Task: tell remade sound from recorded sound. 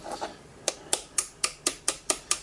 recorded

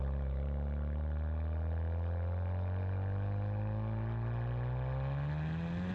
recorded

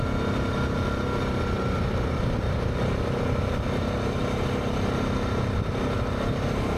recorded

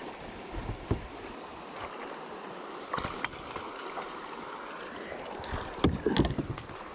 recorded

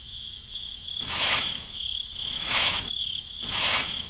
remade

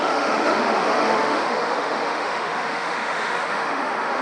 remade